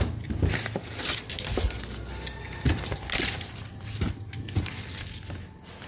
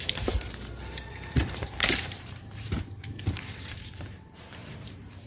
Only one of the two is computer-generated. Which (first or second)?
second